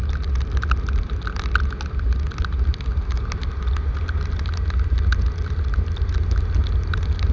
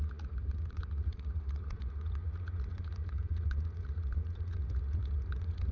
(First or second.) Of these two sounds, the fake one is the second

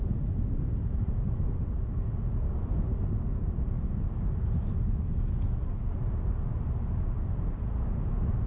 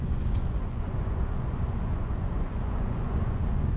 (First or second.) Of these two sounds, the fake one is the second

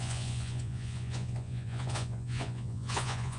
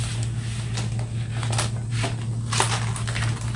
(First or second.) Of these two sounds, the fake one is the first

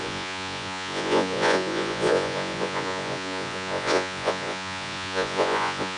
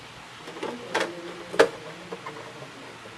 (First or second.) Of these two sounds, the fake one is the first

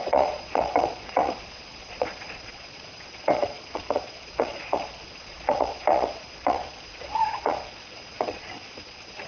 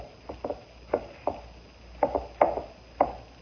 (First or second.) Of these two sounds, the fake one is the first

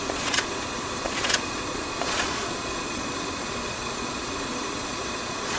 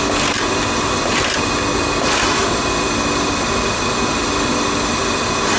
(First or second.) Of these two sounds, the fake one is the first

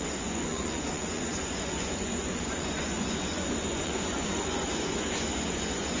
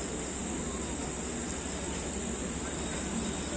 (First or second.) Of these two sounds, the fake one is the first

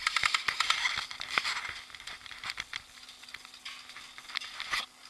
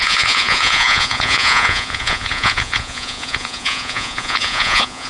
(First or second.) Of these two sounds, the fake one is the second